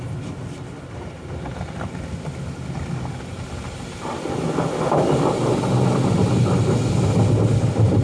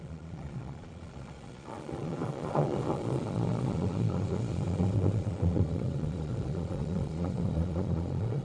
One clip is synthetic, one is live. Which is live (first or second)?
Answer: first